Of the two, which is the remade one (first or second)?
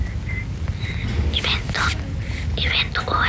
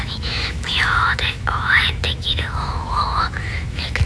second